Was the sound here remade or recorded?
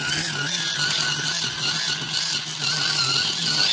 recorded